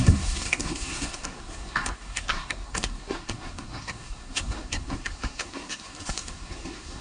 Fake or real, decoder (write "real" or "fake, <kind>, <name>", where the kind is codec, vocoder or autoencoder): fake, codec, SNAC